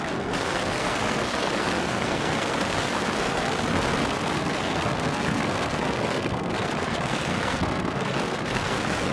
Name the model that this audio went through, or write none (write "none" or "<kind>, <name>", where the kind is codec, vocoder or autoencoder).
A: codec, SNAC